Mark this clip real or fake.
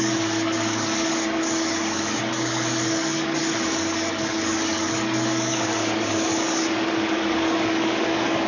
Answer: fake